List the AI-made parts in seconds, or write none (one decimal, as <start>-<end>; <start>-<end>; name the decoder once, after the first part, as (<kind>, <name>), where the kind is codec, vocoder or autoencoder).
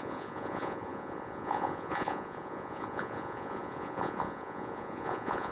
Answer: 0.0-5.5 (vocoder, Vocos)